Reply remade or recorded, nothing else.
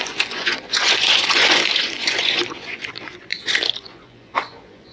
remade